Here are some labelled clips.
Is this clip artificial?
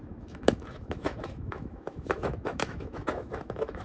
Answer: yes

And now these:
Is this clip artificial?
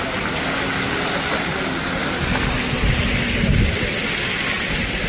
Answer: no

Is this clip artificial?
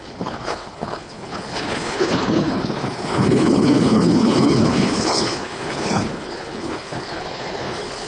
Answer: yes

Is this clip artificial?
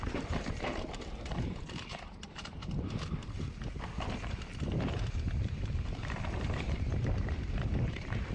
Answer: yes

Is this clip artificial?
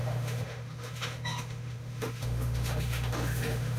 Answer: yes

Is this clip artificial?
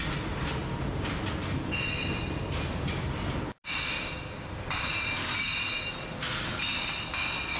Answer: no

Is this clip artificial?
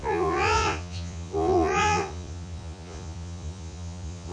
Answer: yes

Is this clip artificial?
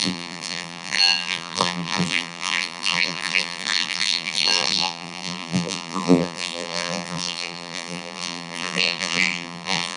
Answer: yes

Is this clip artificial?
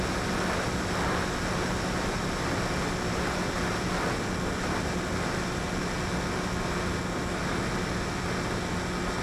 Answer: no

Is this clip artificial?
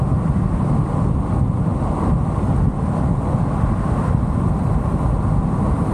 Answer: no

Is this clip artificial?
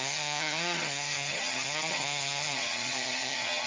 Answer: yes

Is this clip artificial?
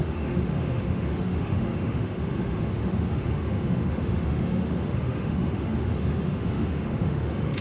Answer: yes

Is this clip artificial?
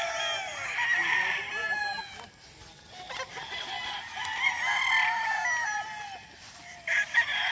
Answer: no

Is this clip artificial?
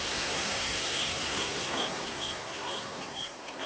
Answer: yes